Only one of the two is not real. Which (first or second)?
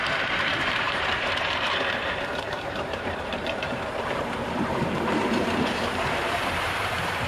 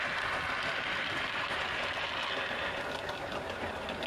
first